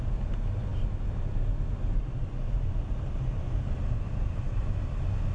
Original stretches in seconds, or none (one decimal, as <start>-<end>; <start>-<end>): 0.0-5.3